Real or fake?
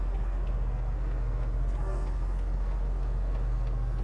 fake